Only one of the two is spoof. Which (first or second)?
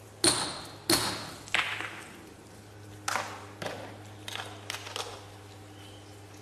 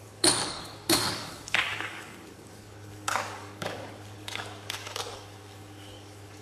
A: second